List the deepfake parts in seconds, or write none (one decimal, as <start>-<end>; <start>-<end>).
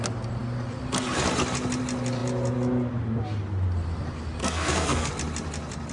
4.4-5.1